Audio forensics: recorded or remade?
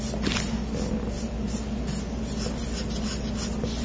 recorded